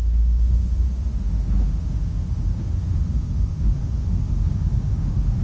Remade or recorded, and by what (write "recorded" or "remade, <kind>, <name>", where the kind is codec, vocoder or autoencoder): remade, autoencoder, DAC-VAE